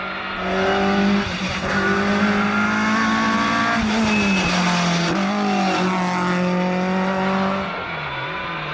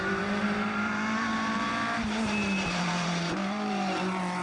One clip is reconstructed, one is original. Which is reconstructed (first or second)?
second